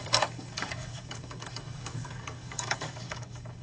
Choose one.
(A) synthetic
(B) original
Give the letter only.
A